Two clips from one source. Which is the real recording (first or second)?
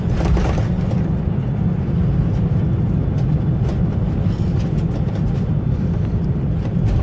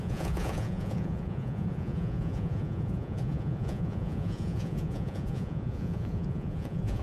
first